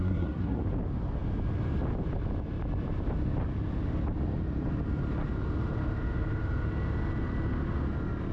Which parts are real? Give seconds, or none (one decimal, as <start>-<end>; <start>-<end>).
0.6-8.3